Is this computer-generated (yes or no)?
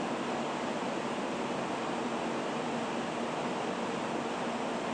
no